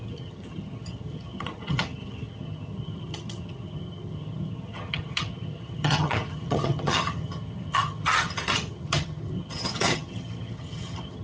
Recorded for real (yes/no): no